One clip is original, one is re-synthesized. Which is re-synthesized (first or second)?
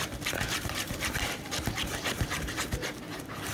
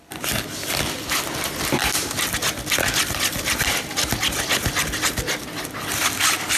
first